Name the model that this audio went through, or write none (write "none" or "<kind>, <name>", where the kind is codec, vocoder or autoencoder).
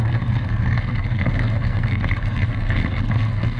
codec, SNAC